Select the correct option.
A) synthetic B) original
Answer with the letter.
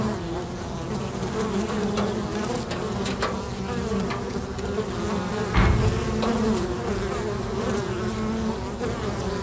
B